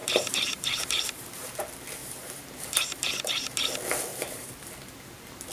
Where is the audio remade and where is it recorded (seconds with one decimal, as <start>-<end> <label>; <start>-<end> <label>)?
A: 0.0-1.6 remade; 1.6-2.0 recorded; 2.0-3.1 remade; 3.1-4.1 recorded; 4.1-4.7 remade; 4.7-5.5 recorded